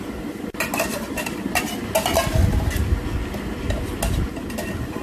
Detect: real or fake real